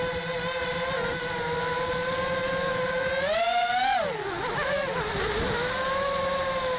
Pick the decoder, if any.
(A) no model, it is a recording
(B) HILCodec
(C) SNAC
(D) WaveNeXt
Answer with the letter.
A